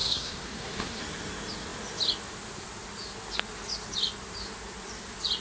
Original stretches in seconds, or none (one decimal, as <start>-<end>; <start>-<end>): 1.0-5.4